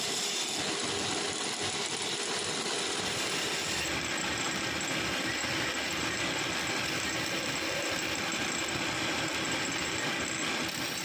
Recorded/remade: recorded